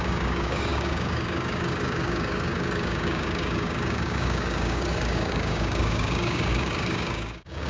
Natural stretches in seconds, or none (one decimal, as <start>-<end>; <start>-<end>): none